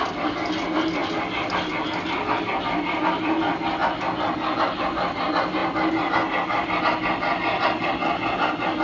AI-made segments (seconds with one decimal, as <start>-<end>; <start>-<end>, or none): 5.6-6.8

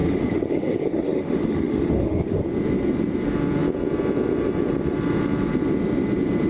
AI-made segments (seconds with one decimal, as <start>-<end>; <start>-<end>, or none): 0.0-2.4

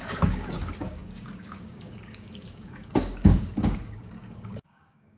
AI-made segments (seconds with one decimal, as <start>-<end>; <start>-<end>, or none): 0.0-5.2

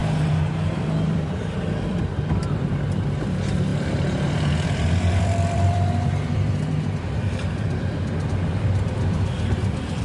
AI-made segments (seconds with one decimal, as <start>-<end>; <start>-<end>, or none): 0.0-10.0

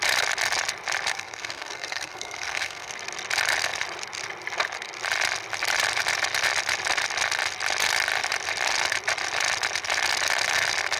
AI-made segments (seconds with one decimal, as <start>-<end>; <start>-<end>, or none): 1.1-2.9

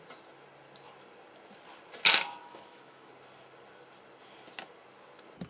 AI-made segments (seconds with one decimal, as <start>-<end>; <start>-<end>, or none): 2.4-3.1

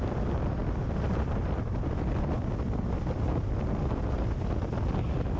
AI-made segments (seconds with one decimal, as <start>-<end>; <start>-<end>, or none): none

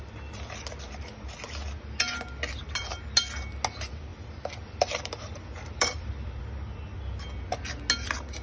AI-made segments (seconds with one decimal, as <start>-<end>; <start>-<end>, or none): 4.1-6.4